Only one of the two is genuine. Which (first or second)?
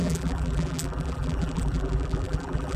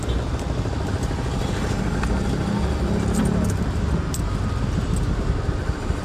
second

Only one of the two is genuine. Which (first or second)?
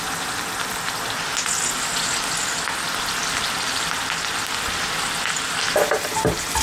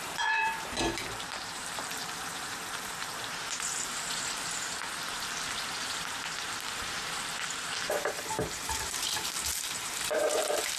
first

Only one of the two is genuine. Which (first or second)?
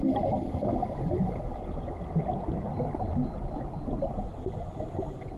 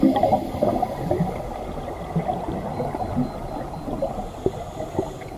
second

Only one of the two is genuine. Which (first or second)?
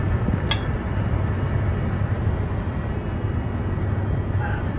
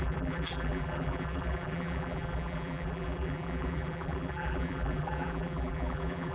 first